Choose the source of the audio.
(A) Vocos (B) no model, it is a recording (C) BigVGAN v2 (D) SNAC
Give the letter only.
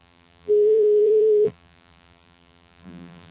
C